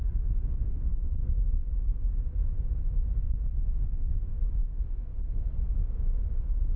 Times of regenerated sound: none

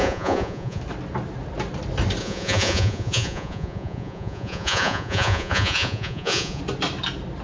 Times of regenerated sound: 0.0-0.8; 2.2-6.6

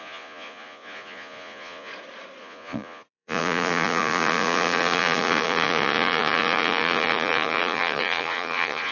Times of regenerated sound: 0.0-1.9; 2.4-8.9

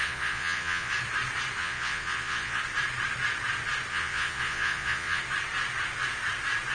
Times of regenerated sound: 0.0-0.9; 1.6-2.6; 3.9-5.2

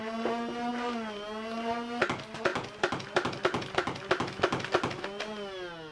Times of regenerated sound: none

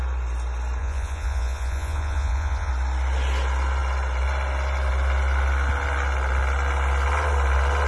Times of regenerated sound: 0.8-2.7

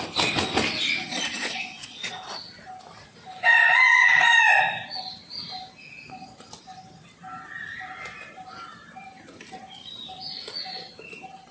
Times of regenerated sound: 1.0-2.4